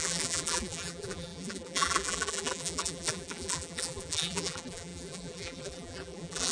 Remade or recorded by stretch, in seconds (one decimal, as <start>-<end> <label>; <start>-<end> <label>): 0.0-6.5 remade